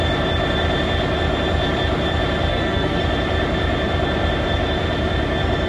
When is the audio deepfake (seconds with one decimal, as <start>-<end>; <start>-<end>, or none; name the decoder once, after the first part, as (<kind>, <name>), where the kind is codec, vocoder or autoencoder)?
2.5-3.0 (codec, SNAC)